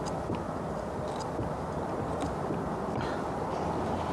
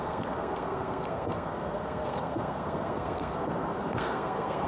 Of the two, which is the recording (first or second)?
first